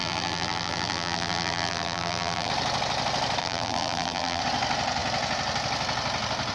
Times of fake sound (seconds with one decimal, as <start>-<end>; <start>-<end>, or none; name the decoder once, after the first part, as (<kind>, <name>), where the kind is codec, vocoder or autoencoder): 0.0-2.5 (vocoder, BigVGAN v2); 3.4-4.4